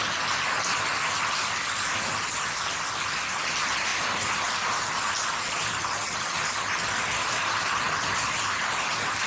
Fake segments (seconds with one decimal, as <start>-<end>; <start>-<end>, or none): none